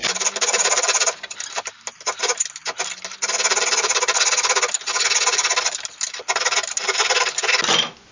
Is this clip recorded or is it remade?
recorded